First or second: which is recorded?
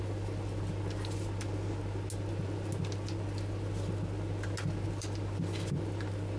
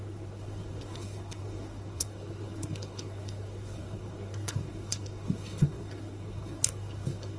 first